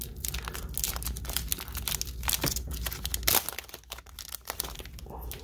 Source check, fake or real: real